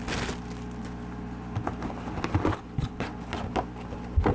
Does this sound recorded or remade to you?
recorded